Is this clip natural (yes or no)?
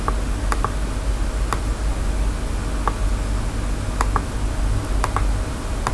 yes